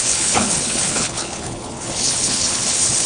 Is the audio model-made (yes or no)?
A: yes